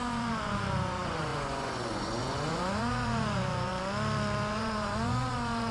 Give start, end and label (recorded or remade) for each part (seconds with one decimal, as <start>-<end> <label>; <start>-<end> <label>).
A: 0.0-3.7 remade; 3.7-4.5 recorded; 4.5-5.7 remade